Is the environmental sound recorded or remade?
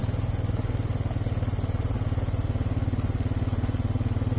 recorded